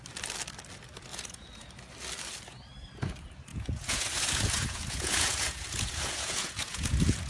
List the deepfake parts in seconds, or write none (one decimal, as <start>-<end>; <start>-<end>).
1.1-1.7; 3.5-7.3